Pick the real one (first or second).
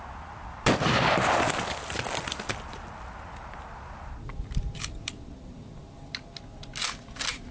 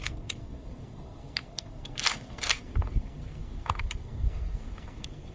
first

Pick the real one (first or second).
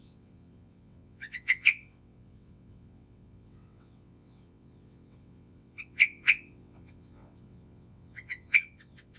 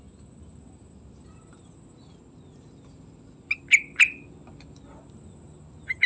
second